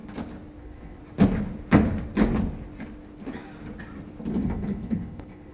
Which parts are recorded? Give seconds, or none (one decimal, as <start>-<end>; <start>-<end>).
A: 0.0-0.6; 1.0-4.3

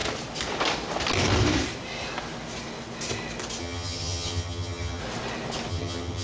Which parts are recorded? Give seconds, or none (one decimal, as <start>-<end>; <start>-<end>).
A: 0.0-3.6; 5.0-5.7

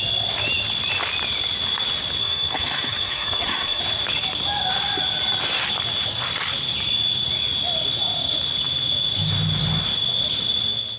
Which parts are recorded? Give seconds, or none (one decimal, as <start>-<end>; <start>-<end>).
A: 0.0-2.2; 3.8-11.0

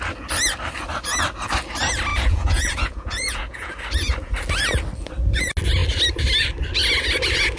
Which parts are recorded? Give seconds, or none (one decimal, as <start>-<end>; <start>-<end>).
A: 0.0-2.1; 3.7-7.6

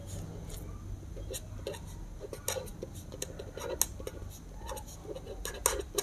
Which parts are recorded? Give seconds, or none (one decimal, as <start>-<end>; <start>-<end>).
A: 0.0-6.0

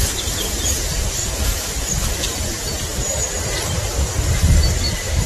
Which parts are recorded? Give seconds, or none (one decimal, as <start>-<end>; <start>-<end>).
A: 1.2-4.4